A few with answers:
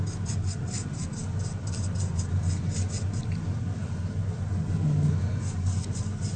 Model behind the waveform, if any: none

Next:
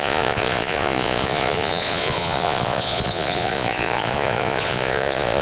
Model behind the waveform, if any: vocoder, Vocos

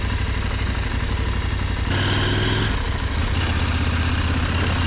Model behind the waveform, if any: none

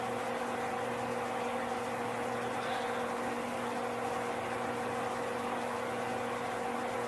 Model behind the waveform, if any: none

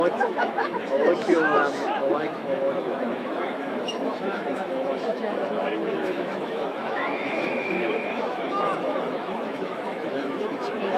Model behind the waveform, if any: autoencoder, DAC-VAE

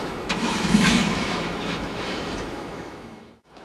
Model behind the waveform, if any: autoencoder, DAC-VAE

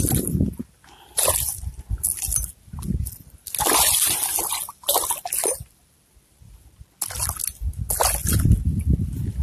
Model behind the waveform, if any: none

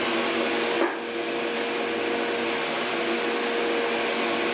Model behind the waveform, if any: none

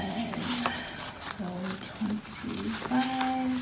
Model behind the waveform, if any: none